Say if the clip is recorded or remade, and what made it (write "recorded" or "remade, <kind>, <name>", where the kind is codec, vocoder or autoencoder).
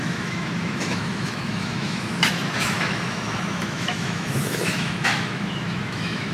remade, autoencoder, DAC-VAE